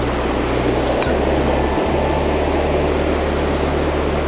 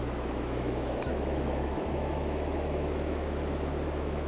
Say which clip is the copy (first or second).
second